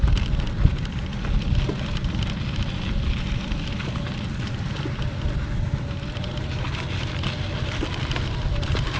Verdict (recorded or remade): recorded